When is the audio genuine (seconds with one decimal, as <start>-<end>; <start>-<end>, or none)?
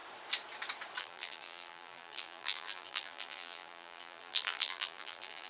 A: 0.0-1.0